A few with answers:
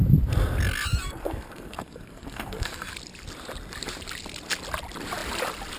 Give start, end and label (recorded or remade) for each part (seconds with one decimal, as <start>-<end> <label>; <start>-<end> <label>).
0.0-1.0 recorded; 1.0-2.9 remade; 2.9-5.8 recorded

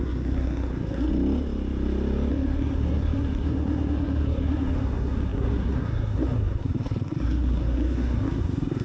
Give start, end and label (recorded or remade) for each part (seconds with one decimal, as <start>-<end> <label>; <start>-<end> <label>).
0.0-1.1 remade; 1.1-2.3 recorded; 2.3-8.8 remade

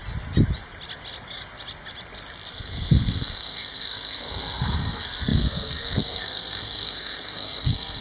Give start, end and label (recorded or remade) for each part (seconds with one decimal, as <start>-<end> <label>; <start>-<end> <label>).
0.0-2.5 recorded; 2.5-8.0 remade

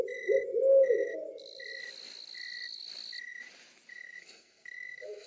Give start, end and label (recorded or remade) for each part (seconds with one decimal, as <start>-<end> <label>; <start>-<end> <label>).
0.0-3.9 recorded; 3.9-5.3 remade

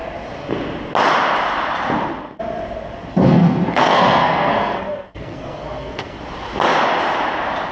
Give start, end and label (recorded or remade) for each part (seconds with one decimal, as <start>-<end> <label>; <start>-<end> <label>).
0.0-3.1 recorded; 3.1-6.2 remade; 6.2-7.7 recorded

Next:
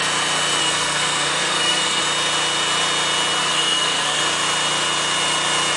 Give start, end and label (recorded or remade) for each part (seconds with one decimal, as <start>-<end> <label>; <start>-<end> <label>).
0.0-0.6 recorded; 0.6-2.0 remade; 2.0-3.4 recorded; 3.4-4.2 remade; 4.2-5.8 recorded